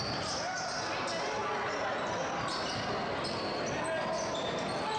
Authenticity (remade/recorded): recorded